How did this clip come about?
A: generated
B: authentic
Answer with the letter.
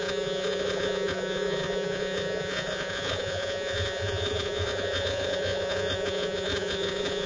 A